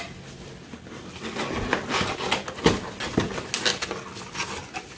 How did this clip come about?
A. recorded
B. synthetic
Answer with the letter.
A